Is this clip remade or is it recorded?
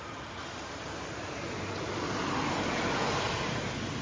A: recorded